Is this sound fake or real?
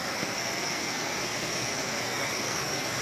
fake